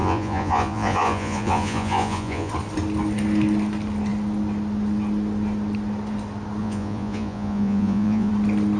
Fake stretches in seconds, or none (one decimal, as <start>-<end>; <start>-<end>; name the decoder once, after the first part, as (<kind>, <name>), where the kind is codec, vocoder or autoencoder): 0.0-2.5 (vocoder, Vocos); 6.6-8.3